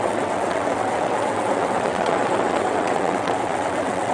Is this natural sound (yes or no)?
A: no